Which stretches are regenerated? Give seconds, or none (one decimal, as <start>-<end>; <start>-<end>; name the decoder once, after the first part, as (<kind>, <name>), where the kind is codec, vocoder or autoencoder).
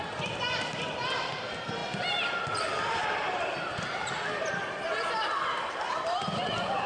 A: 0.0-1.8 (vocoder, BigVGAN v2); 2.4-6.9